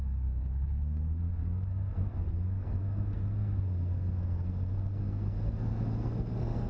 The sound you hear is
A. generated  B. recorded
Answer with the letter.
A